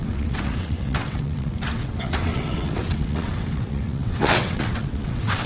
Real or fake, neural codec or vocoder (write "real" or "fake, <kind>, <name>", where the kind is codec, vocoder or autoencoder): fake, vocoder, WaveNeXt